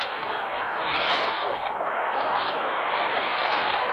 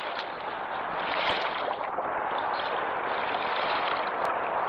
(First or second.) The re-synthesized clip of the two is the first